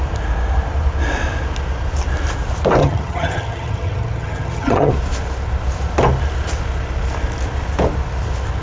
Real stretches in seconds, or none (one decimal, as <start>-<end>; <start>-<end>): 0.0-2.8; 4.9-8.6